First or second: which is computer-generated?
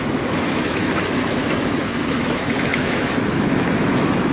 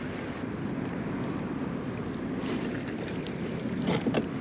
first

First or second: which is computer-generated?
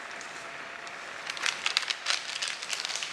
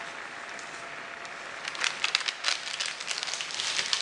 first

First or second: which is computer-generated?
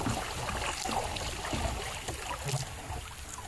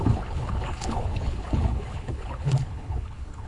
second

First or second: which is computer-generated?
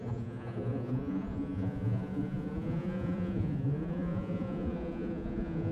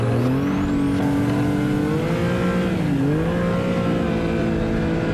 first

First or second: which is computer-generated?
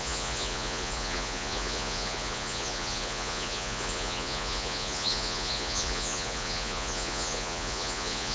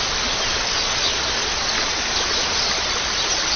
first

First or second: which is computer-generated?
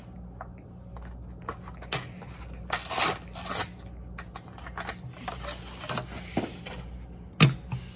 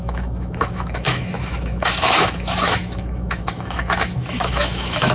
second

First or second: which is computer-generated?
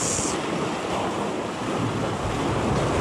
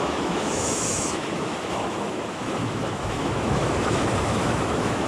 second